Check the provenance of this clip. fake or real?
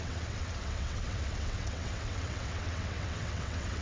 fake